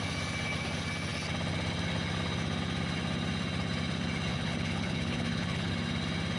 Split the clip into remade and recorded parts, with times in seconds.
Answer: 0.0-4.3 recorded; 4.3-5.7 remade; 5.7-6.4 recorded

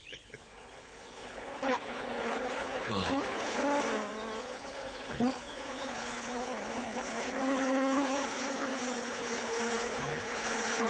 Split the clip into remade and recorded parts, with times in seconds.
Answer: 0.0-3.6 remade; 3.6-4.4 recorded; 4.4-10.9 remade

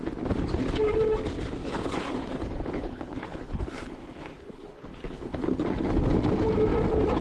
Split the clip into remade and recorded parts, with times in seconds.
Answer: 0.0-1.6 recorded; 1.6-5.9 remade; 5.9-7.2 recorded

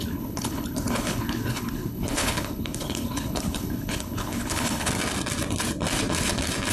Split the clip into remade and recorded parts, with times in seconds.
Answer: 0.0-4.9 remade; 4.9-6.7 recorded

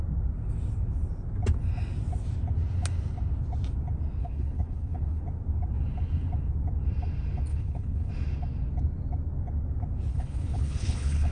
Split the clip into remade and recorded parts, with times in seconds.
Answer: 0.0-4.2 recorded; 4.2-5.2 remade; 5.2-7.5 recorded; 7.5-8.1 remade; 8.1-10.1 recorded; 10.1-11.3 remade

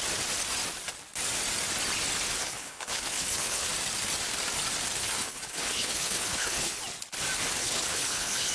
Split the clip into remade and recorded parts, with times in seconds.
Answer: 0.0-2.4 recorded; 2.4-3.7 remade; 3.7-5.0 recorded; 5.0-6.8 remade; 6.8-7.6 recorded; 7.6-8.5 remade